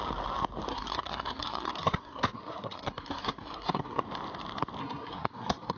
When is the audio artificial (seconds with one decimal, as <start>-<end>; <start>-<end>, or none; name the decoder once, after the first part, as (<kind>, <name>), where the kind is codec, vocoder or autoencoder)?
0.7-4.0 (codec, SNAC); 4.8-5.8